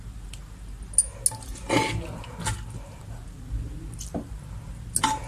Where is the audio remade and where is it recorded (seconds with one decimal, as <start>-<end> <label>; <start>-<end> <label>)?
0.0-5.3 recorded